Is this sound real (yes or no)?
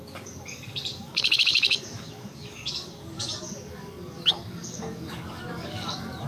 no